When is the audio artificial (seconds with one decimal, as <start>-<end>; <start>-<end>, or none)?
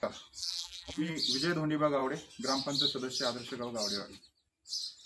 0.4-1.1